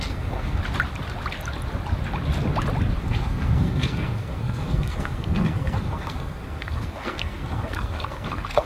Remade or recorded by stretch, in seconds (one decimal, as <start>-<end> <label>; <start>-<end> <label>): 0.0-0.6 remade; 0.6-3.0 recorded; 3.0-8.7 remade